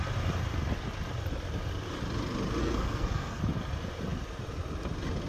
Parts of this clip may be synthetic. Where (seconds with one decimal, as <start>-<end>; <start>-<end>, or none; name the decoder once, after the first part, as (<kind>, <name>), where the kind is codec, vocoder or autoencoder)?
2.6-3.4 (codec, SNAC)